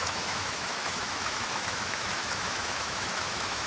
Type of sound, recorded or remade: remade